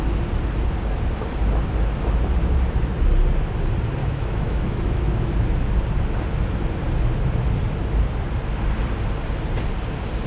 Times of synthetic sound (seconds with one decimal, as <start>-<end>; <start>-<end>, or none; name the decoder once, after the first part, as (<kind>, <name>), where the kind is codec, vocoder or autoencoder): 4.0-5.3 (autoencoder, DAC-VAE)